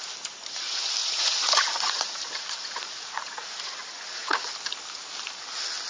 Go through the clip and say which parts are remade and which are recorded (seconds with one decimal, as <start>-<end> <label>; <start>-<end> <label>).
0.0-1.0 recorded; 1.0-4.5 remade; 4.5-5.9 recorded